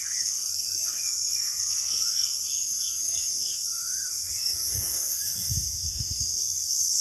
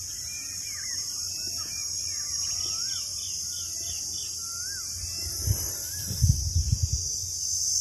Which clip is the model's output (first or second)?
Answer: first